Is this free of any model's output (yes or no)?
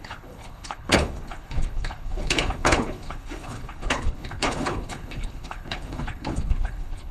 no